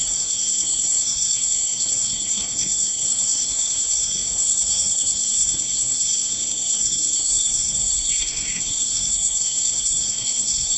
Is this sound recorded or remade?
remade